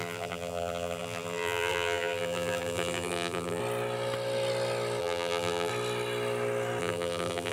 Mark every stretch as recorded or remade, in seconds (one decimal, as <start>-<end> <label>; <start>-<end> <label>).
0.0-3.6 remade; 3.6-5.0 recorded; 5.0-5.7 remade; 5.7-6.8 recorded; 6.8-7.5 remade